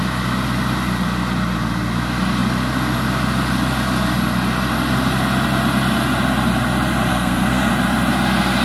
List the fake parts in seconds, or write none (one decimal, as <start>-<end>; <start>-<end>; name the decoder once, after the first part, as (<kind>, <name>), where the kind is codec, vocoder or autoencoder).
7.1-7.7 (codec, SNAC)